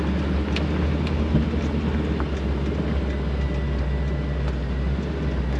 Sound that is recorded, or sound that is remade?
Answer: recorded